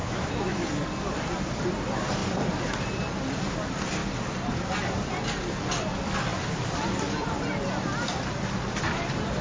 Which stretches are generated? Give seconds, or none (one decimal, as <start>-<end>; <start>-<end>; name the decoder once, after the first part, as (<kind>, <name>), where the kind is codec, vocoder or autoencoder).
0.0-0.7 (autoencoder, DAC-VAE)